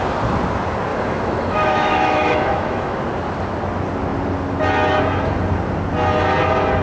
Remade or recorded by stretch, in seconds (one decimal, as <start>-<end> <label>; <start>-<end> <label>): 0.0-0.9 recorded; 0.9-3.0 remade; 3.0-6.8 recorded